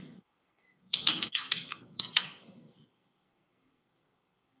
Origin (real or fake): fake